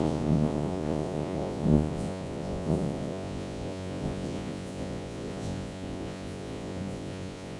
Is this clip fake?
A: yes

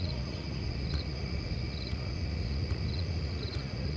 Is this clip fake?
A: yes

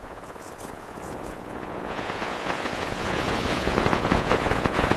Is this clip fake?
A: yes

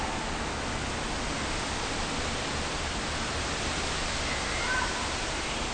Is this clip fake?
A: no